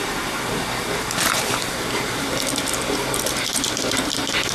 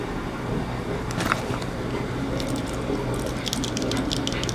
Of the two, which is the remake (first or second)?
first